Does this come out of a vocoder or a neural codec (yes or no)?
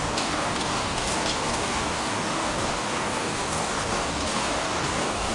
yes